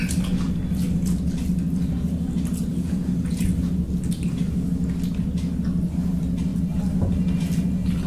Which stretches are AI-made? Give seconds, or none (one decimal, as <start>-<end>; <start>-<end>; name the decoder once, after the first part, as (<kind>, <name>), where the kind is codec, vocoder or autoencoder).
2.7-3.5 (vocoder, Vocos)